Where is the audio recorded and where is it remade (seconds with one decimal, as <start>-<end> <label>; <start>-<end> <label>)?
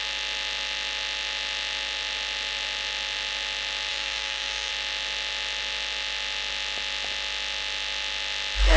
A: 0.0-3.9 recorded; 3.9-4.7 remade; 4.7-8.8 recorded